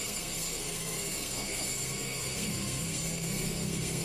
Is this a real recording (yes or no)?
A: no